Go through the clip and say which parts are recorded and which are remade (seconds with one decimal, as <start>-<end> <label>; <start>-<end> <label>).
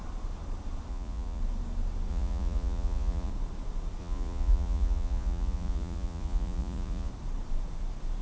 0.0-0.9 recorded; 0.9-1.4 remade; 1.4-2.1 recorded; 2.1-3.3 remade; 3.3-4.0 recorded; 4.0-7.1 remade; 7.1-8.2 recorded